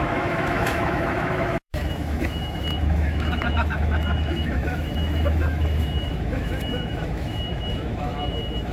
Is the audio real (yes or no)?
no